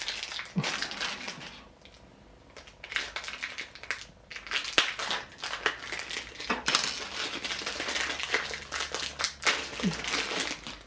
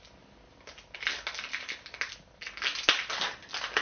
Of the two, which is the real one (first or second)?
first